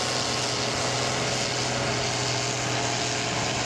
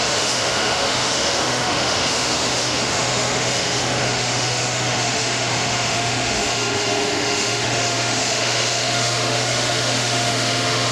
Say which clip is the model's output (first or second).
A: second